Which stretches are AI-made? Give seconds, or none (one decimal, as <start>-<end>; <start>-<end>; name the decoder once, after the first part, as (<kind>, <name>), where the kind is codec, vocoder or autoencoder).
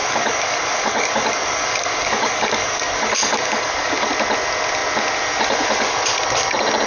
0.0-4.1 (codec, DAC)